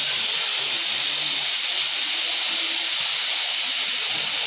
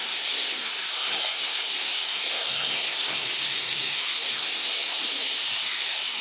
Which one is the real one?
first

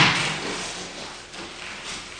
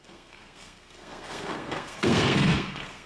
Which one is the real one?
first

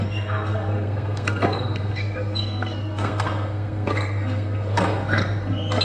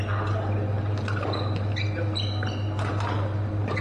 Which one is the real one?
second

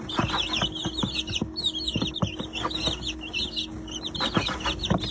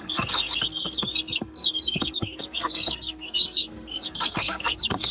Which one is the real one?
first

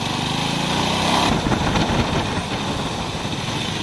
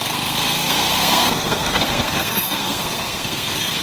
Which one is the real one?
first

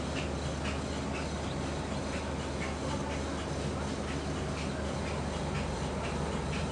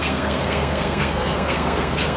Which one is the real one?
first